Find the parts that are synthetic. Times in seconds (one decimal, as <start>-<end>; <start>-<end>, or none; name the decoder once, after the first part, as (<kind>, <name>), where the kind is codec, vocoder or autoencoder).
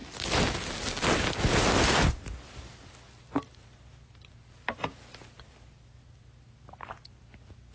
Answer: none